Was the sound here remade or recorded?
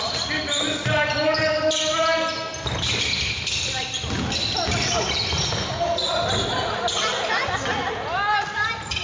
recorded